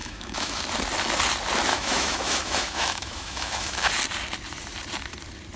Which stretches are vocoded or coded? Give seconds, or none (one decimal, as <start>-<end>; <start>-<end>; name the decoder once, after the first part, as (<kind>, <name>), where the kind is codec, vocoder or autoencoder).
0.0-0.6 (autoencoder, DAC-VAE); 1.7-3.9